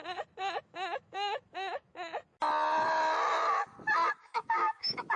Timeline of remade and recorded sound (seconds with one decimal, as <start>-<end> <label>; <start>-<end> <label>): 0.0-0.6 recorded; 0.6-2.3 remade; 2.3-4.1 recorded; 4.1-5.2 remade